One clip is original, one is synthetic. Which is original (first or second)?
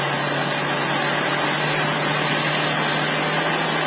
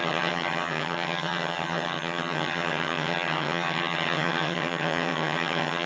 first